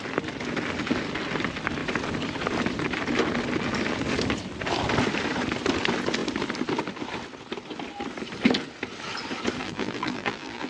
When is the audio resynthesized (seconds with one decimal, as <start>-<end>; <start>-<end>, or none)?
9.6-10.7